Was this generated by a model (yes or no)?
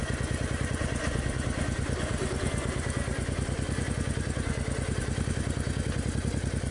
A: no